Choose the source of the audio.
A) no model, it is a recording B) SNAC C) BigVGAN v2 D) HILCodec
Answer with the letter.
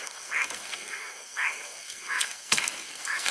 B